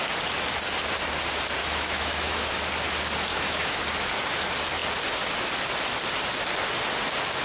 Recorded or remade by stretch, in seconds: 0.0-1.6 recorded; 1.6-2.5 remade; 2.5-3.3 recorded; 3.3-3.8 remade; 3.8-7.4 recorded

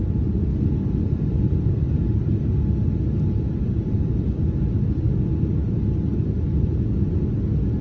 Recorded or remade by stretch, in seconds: 0.0-7.8 recorded

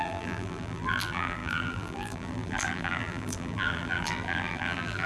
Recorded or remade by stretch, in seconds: 0.0-5.1 remade

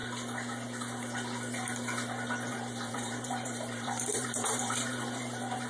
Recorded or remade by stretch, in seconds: 0.0-2.5 recorded; 2.5-5.7 remade

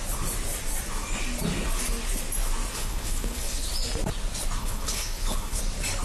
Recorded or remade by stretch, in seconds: 0.0-2.7 recorded; 2.7-3.7 remade; 3.7-4.6 recorded; 4.6-5.6 remade; 5.6-6.0 recorded

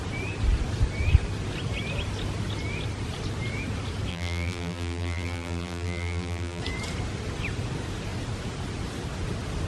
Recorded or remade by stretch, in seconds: 0.0-4.1 recorded; 4.1-6.6 remade; 6.6-9.7 recorded